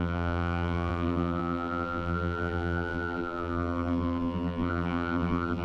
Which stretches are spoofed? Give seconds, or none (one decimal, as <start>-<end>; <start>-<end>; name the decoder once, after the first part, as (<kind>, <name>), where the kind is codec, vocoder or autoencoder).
0.0-5.6 (vocoder, BigVGAN v2)